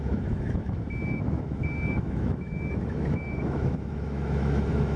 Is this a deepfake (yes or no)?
yes